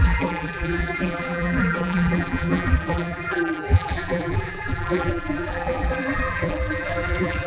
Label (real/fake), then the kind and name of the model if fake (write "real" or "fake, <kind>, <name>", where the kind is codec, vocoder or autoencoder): fake, vocoder, BigVGAN v2